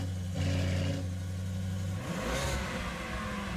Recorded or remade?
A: recorded